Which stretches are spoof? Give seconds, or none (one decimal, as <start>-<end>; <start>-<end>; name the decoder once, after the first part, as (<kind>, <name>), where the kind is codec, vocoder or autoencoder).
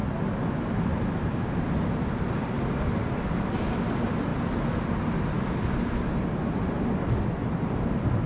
0.6-4.3 (vocoder, BigVGAN v2); 7.0-8.3